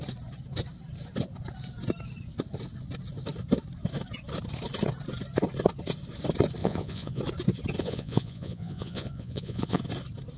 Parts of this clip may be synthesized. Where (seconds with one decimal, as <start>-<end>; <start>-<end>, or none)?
6.6-7.2; 7.8-9.8